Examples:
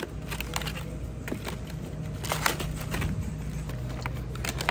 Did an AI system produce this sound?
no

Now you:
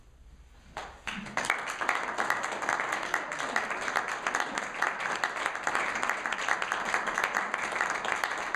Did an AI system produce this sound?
no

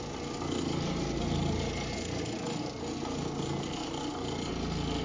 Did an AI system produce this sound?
no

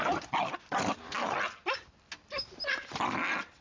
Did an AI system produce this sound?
no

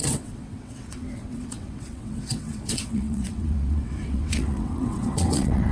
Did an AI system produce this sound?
yes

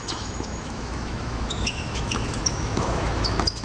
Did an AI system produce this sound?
yes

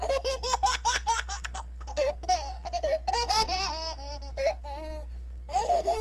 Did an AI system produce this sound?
yes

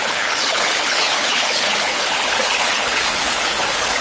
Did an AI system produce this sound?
yes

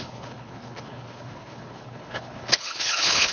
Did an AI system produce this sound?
yes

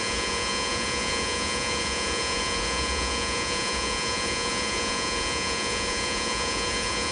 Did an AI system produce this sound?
yes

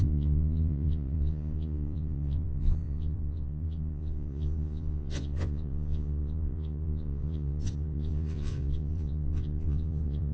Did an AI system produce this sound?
yes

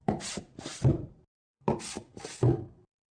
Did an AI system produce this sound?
yes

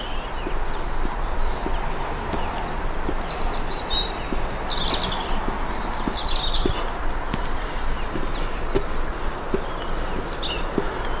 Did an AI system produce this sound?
no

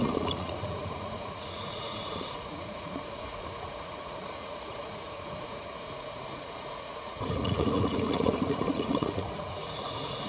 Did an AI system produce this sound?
yes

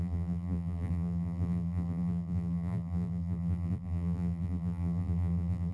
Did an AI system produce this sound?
yes